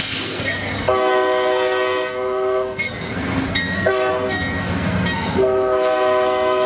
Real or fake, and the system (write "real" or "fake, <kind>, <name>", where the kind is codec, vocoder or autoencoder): fake, codec, SNAC